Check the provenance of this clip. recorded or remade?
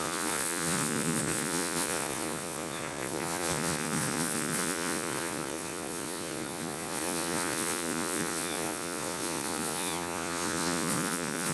remade